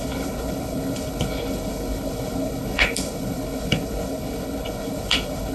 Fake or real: fake